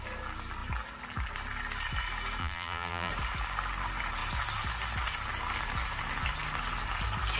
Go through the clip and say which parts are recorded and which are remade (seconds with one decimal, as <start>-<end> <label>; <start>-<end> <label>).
0.0-2.4 recorded; 2.4-3.1 remade; 3.1-7.4 recorded